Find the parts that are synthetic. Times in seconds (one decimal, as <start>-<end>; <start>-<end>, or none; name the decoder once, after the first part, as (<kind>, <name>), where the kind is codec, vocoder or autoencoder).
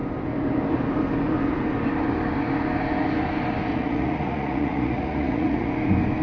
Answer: 3.7-5.7 (vocoder, Vocos)